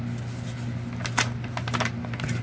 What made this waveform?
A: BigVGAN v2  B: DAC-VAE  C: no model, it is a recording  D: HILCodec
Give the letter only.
C